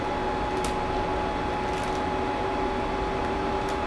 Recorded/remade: recorded